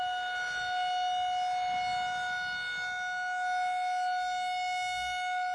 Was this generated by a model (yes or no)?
no